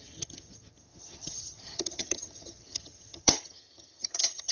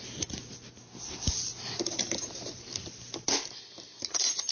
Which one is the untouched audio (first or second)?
second